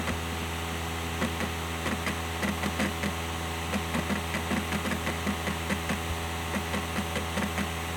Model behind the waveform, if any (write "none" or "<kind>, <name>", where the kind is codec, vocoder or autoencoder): none